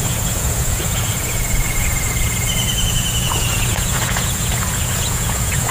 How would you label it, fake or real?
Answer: fake